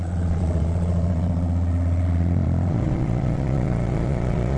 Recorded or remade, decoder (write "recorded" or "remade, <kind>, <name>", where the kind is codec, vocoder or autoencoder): remade, vocoder, Vocos